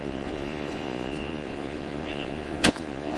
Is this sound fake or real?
fake